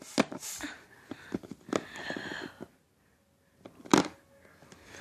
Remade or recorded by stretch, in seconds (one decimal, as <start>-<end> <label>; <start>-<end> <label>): 0.0-5.0 recorded